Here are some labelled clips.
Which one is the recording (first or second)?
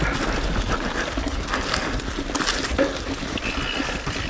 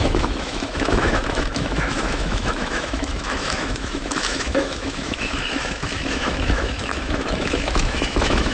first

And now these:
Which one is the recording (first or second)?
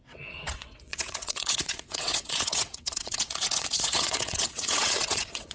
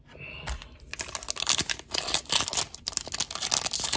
second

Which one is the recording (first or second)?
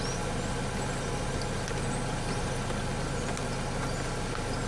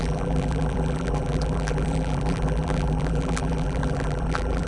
first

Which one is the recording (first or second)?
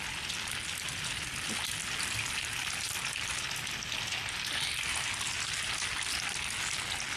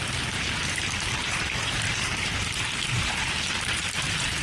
first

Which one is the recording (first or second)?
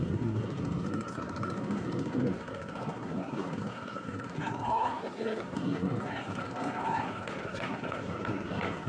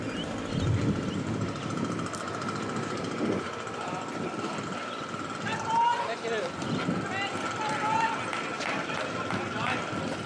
second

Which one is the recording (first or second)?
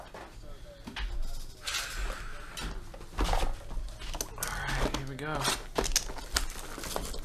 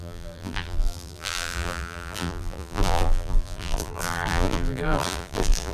first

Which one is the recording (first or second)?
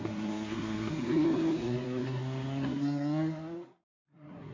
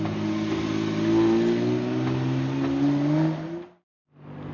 second